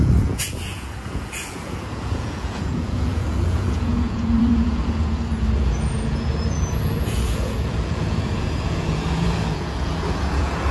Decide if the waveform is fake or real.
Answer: fake